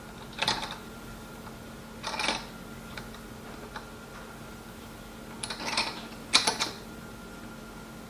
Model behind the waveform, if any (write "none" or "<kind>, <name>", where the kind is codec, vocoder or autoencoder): none